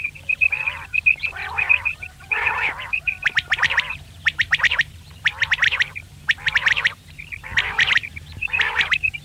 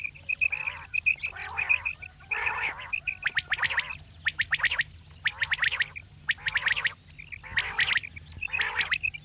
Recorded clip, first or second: second